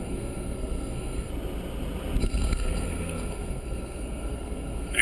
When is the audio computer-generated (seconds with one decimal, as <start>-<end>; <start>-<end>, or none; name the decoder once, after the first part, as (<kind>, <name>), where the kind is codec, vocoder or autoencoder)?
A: 0.0-1.3 (codec, SNAC); 2.2-5.0